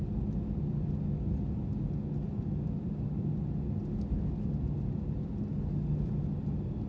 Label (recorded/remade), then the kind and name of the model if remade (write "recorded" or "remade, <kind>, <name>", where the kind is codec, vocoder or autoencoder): recorded